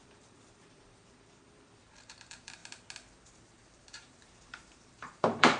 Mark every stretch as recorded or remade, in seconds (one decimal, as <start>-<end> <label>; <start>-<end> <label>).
0.0-2.6 remade; 2.6-3.1 recorded; 3.1-5.6 remade